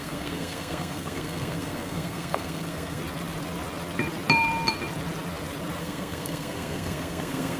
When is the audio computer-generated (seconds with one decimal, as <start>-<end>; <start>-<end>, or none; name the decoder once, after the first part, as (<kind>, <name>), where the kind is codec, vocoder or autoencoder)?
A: 0.0-3.0 (codec, SNAC); 5.8-7.6